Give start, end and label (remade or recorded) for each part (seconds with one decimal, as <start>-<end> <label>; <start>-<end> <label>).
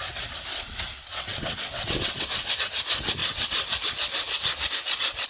0.0-0.5 recorded; 0.5-2.6 remade; 2.6-5.3 recorded